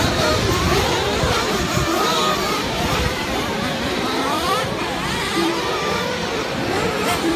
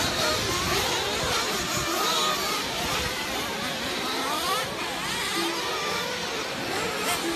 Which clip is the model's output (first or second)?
first